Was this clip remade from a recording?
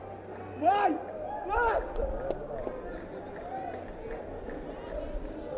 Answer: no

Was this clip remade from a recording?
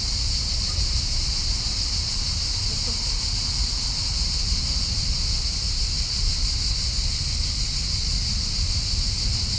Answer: no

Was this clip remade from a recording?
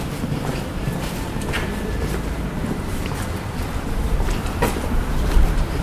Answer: yes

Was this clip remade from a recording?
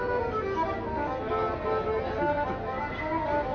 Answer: no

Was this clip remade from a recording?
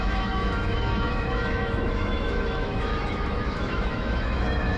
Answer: yes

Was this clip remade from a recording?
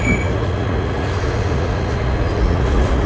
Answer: yes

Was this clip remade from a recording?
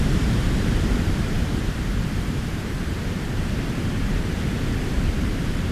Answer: yes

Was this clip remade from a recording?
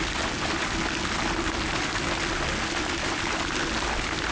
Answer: no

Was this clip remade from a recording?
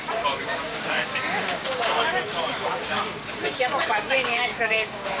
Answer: yes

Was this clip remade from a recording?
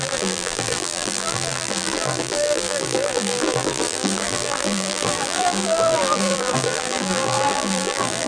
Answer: yes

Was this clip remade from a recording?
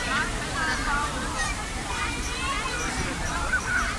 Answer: yes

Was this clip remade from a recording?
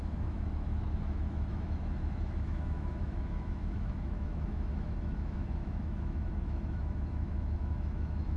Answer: yes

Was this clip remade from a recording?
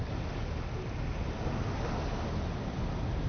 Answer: no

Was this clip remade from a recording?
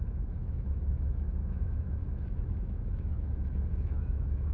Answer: yes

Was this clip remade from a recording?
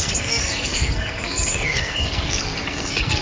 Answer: yes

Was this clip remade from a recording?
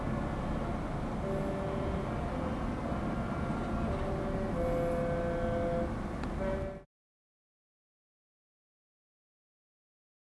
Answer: no